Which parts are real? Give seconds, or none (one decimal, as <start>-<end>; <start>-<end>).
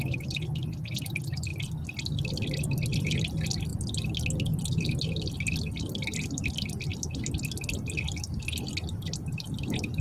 0.0-10.0